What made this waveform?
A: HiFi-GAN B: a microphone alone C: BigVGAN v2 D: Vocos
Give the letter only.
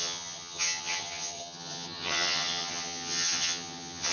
A